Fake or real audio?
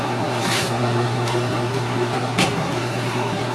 fake